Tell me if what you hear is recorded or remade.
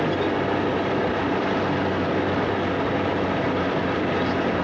recorded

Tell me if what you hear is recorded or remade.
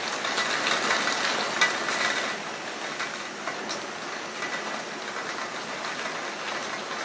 recorded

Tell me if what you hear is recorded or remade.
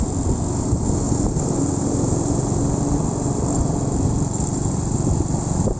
recorded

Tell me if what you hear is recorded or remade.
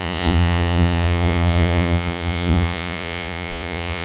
remade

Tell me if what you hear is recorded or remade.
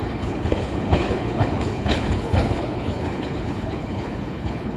remade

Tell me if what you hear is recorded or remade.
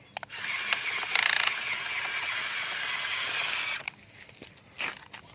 recorded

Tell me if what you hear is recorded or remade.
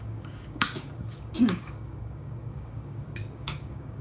remade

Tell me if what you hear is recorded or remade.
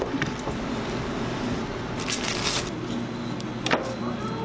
recorded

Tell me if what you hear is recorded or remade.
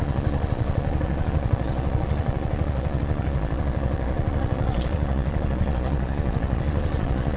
remade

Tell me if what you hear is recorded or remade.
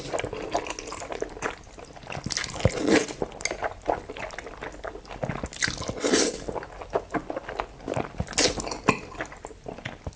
recorded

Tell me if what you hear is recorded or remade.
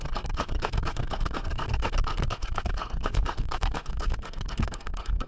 remade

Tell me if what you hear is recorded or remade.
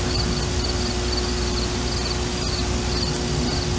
recorded